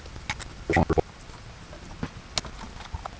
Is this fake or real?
real